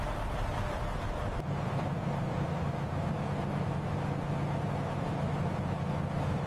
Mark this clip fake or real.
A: real